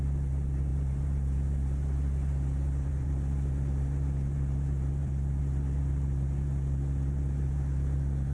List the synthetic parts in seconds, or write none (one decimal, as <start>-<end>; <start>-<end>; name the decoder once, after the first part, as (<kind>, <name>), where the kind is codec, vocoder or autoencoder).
0.0-8.3 (vocoder, BigVGAN v2)